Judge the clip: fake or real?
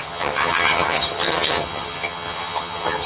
fake